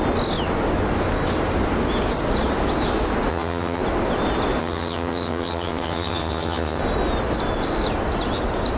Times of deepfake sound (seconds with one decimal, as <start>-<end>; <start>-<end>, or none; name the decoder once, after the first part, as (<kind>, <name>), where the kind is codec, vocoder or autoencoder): 3.3-3.8 (vocoder, HiFi-GAN); 4.6-6.8